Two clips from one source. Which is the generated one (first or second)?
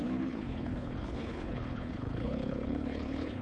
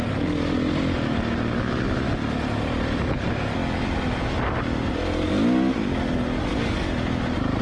first